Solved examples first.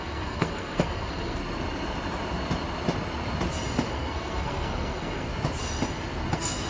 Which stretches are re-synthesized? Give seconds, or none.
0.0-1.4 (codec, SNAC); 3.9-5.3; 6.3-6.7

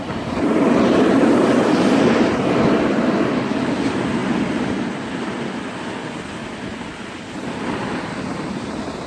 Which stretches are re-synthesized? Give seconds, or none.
none

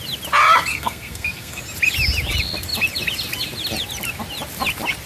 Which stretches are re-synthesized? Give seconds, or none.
0.7-1.6 (codec, SNAC)

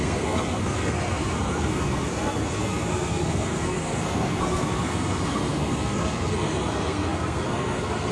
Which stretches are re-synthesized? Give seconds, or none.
0.0-8.1 (codec, SNAC)